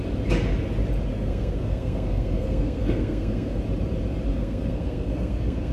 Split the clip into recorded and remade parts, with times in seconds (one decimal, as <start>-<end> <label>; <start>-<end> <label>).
0.0-1.1 recorded; 1.1-3.6 remade; 3.6-4.3 recorded; 4.3-5.7 remade